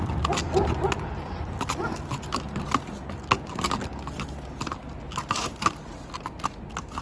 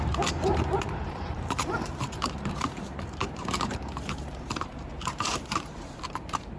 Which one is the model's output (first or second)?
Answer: second